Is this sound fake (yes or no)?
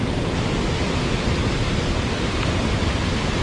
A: no